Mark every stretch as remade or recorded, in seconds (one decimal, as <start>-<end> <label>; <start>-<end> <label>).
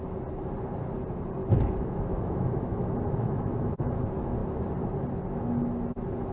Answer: 0.0-1.4 recorded; 1.4-4.0 remade; 4.0-6.3 recorded